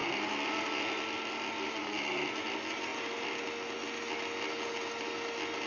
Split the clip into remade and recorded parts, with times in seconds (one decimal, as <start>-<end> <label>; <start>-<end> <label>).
0.0-5.7 recorded